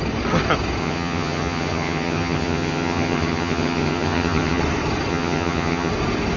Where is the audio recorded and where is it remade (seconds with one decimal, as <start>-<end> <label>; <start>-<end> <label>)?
0.0-0.8 recorded; 0.8-4.6 remade; 4.6-5.1 recorded; 5.1-5.9 remade; 5.9-6.4 recorded